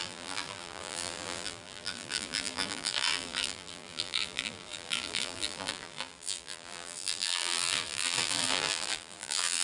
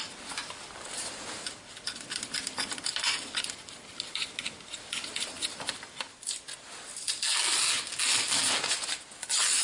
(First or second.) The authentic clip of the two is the second